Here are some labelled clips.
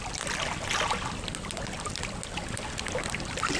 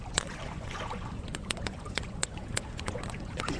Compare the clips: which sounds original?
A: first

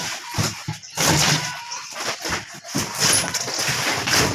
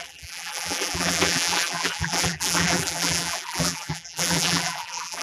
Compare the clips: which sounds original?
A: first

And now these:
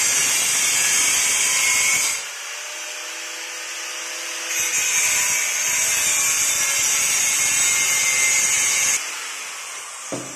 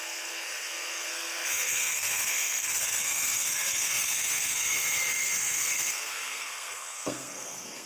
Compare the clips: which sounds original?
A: first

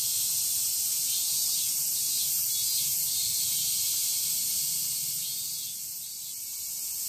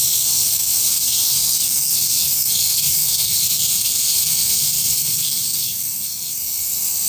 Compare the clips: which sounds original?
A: first